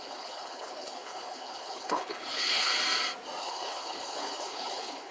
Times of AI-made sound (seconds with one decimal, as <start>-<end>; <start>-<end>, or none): 0.0-2.7; 3.4-5.1